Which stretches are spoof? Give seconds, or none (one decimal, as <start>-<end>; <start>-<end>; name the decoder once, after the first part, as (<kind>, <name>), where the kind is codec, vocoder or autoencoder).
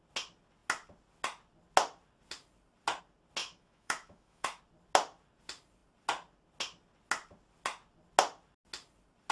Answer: 3.4-4.6 (autoencoder, DAC-VAE)